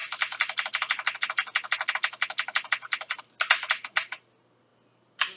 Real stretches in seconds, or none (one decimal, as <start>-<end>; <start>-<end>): 0.0-5.4